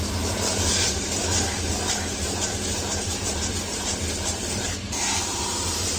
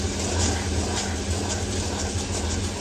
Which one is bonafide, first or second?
second